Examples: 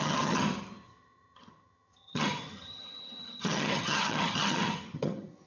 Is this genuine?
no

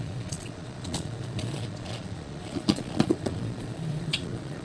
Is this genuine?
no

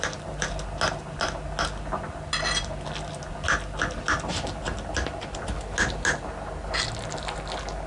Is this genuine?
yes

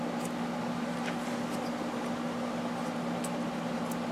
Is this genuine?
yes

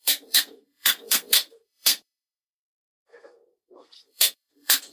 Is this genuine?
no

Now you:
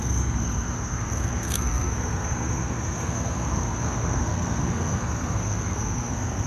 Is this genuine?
no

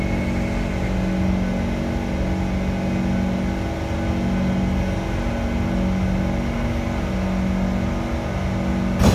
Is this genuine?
yes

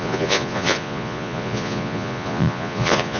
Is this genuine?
no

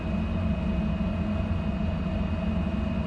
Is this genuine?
yes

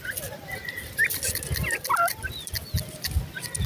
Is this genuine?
yes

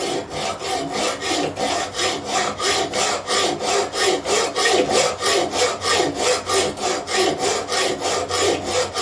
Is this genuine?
yes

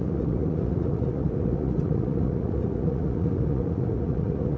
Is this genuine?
no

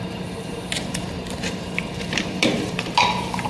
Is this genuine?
no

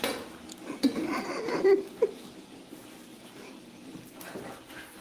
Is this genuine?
yes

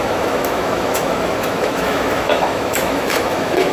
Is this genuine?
no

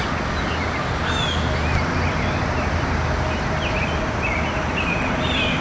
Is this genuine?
yes